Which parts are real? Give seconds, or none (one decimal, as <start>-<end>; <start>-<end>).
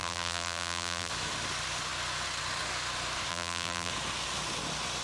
1.1-3.3; 3.9-5.0